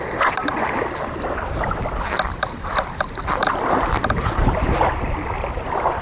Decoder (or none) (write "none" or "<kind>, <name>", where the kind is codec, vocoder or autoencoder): none